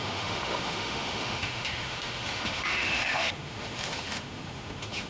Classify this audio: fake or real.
fake